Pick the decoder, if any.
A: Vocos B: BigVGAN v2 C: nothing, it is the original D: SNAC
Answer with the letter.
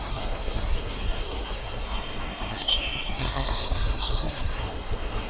D